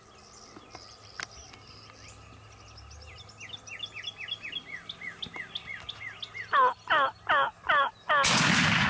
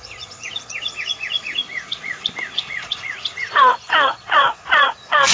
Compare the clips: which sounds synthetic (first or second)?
second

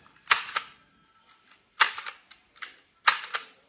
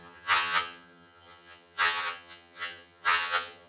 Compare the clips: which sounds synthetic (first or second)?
second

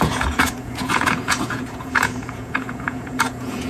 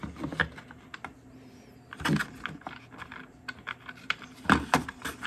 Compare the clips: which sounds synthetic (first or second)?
first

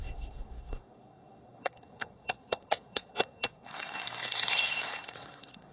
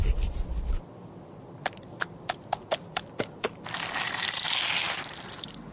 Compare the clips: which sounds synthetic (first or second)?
first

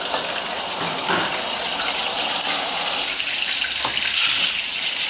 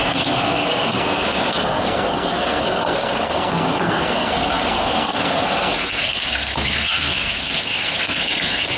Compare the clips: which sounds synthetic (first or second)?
second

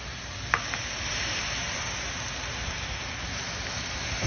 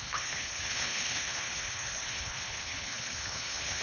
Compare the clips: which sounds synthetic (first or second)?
second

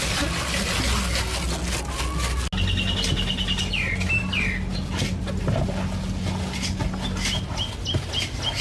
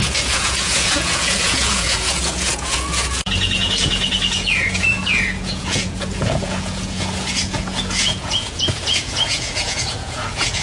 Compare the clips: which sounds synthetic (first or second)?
second